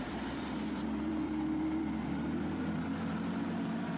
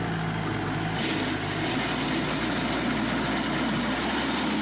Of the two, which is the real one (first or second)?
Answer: second